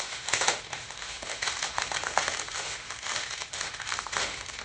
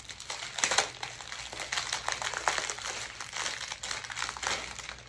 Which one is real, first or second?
second